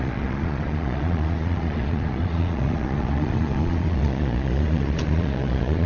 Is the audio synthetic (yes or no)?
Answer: yes